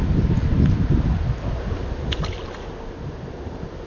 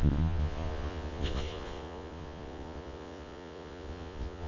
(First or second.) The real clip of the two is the first